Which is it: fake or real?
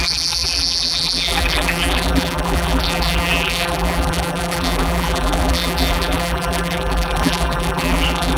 fake